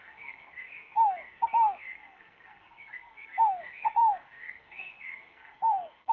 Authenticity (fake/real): fake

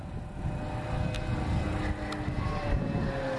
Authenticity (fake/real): real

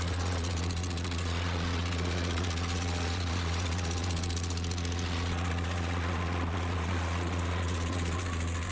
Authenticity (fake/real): fake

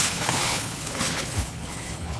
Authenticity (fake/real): fake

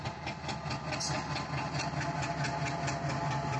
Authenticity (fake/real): real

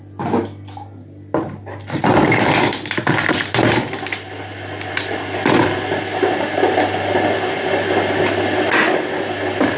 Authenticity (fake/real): real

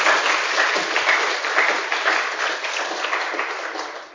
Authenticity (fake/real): real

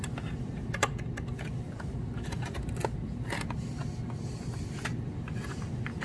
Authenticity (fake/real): real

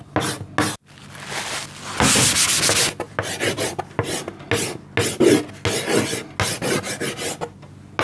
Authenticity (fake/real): real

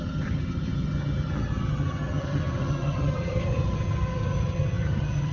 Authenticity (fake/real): fake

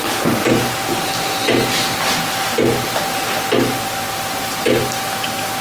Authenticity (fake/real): real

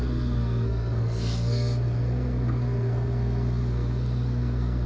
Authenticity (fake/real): fake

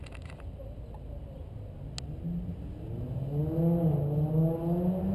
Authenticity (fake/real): real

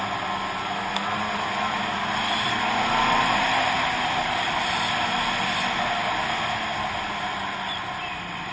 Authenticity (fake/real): real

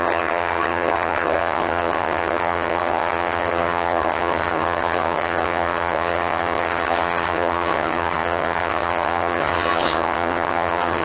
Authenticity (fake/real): fake